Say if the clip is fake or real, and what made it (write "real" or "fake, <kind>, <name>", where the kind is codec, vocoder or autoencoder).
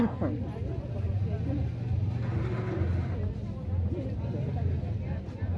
real